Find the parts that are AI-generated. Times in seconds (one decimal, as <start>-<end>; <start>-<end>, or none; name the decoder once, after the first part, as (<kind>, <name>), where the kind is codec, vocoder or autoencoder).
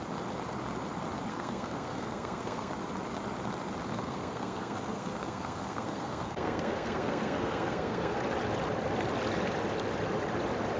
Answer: 1.3-2.7 (codec, SNAC); 3.9-8.2